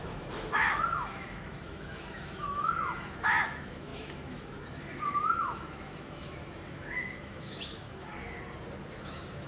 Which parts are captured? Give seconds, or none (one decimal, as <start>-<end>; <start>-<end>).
8.1-8.9